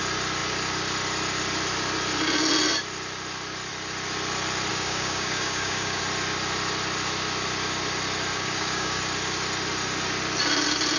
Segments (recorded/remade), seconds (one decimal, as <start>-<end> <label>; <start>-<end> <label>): 0.0-4.7 recorded; 4.7-6.0 remade; 6.0-8.3 recorded; 8.3-9.0 remade; 9.0-11.0 recorded